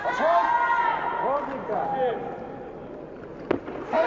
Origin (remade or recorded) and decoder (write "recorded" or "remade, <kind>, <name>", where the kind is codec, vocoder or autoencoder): recorded